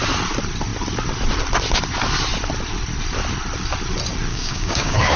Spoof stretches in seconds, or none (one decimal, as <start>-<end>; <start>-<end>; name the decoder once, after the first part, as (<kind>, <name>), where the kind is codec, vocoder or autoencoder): 4.3-5.2 (codec, DAC)